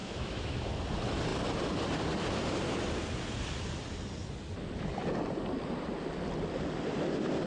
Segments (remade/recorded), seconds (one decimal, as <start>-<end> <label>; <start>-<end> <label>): 0.0-0.7 remade; 0.7-7.5 recorded

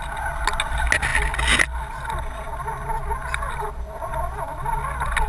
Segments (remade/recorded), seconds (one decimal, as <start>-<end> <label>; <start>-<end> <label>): 0.0-5.3 recorded

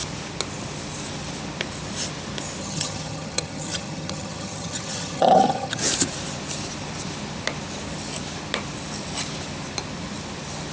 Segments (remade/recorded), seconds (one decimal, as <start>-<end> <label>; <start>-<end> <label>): 0.0-2.6 recorded; 2.6-5.8 remade; 5.8-10.7 recorded

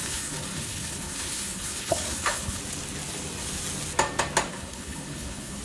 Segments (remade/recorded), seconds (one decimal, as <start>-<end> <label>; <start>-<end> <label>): 0.0-2.6 remade; 2.6-4.5 recorded; 4.5-5.6 remade

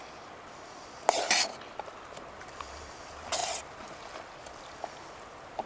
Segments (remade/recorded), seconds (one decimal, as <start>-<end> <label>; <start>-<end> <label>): 0.0-5.7 recorded